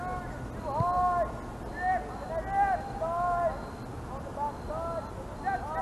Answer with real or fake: real